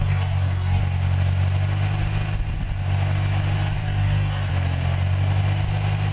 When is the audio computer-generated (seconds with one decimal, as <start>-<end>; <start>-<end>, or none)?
0.0-0.8; 3.8-4.5